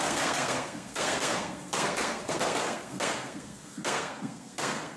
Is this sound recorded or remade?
remade